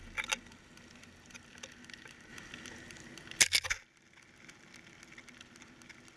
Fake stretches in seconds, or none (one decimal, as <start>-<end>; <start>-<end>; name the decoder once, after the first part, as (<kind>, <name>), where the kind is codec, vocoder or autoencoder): none